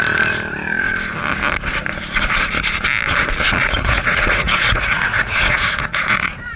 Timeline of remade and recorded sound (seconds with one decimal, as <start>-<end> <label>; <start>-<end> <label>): 0.0-3.6 recorded; 3.6-6.6 remade